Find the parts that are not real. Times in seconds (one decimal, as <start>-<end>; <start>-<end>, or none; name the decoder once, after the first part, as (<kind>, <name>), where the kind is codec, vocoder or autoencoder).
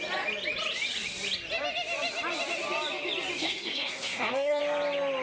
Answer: 3.4-4.6 (codec, SNAC)